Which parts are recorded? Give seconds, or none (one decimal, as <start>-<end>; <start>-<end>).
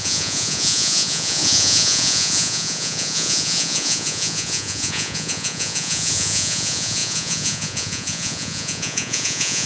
none